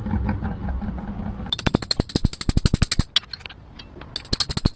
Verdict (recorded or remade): recorded